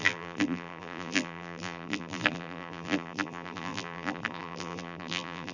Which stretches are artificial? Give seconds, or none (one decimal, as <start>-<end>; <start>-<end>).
0.0-5.5